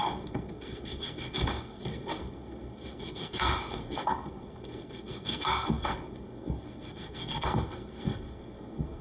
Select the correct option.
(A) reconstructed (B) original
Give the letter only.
A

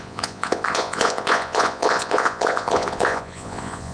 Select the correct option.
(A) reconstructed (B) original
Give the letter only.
A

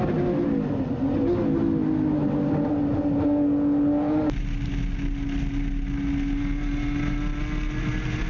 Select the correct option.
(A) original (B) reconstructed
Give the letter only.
A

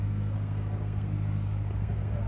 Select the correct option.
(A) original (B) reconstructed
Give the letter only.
B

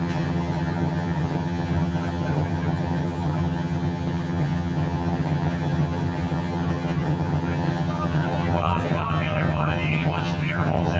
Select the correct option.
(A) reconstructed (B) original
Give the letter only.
A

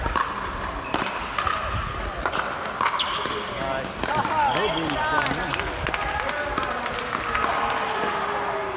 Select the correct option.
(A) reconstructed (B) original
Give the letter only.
B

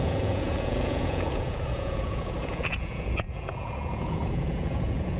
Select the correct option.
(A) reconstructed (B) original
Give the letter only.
A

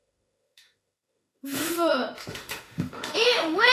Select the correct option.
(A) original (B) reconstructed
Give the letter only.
B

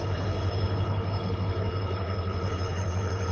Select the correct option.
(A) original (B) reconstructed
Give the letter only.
B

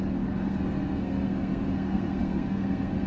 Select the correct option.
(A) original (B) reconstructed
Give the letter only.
B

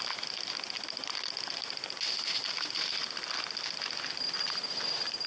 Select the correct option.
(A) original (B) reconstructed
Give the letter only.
A